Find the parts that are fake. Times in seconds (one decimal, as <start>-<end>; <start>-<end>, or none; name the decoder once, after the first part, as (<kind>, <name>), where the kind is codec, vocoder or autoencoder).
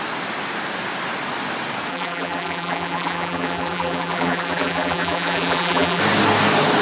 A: 1.9-6.0 (vocoder, BigVGAN v2)